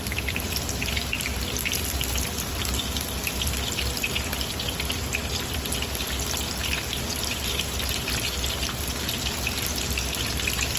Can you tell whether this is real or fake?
real